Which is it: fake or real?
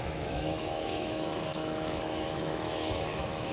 fake